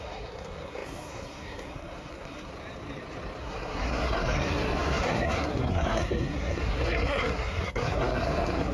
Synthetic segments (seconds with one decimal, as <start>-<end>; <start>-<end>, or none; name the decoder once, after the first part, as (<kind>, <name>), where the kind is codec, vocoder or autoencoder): 0.0-2.5 (codec, SNAC); 3.4-8.7